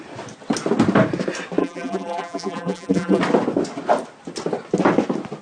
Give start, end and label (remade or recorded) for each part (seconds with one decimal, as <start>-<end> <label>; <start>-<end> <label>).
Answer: 0.0-1.6 recorded; 1.6-3.2 remade; 3.2-5.4 recorded